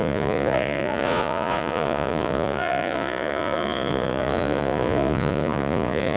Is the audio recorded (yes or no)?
no